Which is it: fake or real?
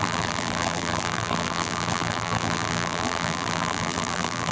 fake